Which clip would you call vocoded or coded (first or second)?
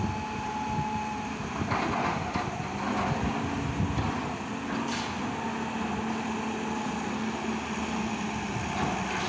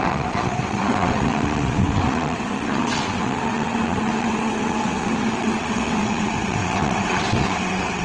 second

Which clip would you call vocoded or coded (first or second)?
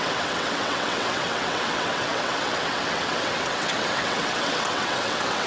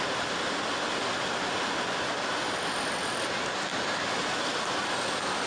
first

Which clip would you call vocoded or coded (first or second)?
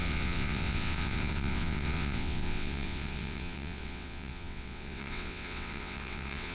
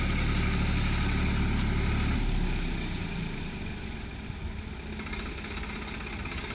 first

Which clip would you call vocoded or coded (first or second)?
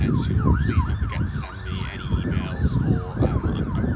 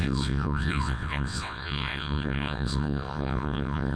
second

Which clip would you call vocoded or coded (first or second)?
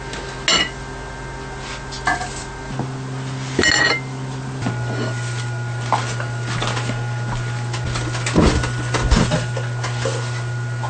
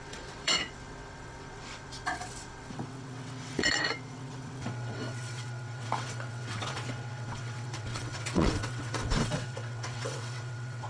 second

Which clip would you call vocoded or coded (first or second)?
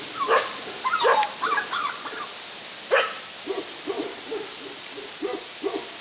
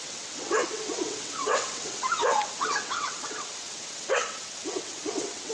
second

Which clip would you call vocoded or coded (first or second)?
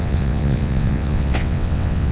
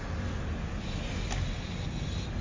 first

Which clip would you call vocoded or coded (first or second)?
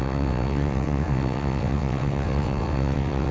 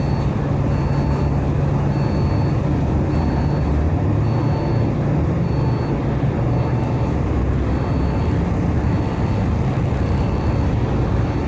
first